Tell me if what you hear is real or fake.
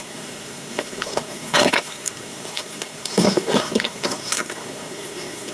fake